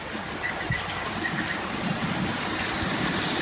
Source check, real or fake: real